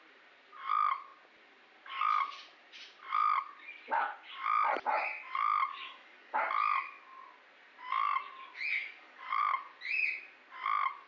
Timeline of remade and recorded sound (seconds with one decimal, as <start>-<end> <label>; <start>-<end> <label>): 0.0-5.7 recorded; 5.7-6.4 remade; 6.4-8.8 recorded; 8.8-9.4 remade; 9.4-11.1 recorded